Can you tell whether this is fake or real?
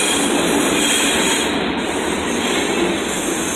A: real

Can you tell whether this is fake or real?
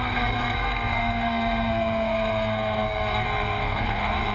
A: fake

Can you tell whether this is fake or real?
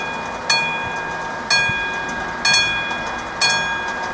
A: real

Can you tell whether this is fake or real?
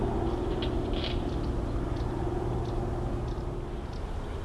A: real